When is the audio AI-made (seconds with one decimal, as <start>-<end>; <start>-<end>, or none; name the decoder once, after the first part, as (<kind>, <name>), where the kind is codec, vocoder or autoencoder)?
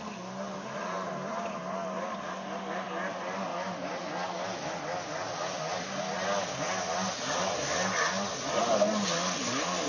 none